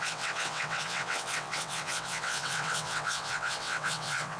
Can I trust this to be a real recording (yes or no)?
no